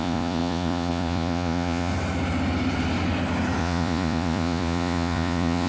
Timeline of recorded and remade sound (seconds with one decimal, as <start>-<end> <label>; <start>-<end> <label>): 0.0-1.9 remade; 1.9-3.6 recorded; 3.6-5.7 remade